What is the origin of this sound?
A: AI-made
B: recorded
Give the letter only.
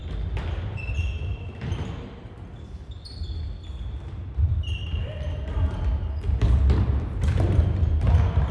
B